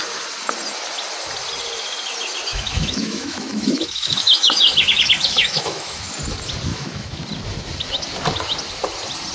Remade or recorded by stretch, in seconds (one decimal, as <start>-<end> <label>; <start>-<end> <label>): 0.0-2.5 recorded; 2.5-6.1 remade; 6.1-6.7 recorded; 6.7-7.2 remade; 7.2-9.3 recorded